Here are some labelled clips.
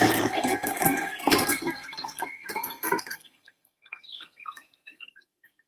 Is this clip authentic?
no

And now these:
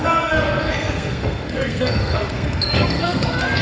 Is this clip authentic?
no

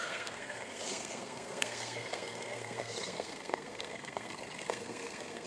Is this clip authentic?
no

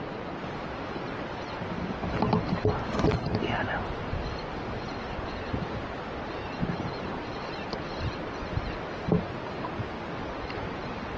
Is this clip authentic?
yes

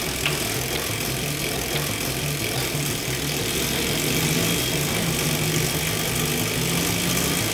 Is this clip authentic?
yes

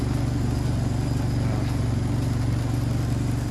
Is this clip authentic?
yes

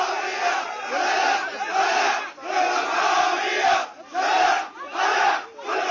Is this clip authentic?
yes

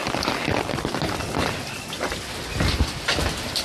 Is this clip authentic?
yes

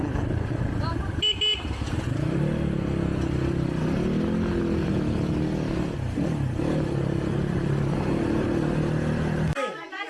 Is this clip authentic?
yes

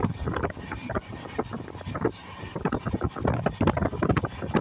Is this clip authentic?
yes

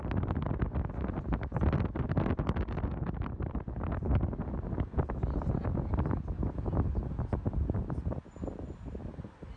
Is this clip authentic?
yes